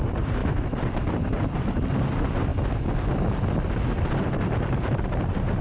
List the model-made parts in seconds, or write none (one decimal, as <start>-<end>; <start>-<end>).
0.0-2.5; 3.6-5.6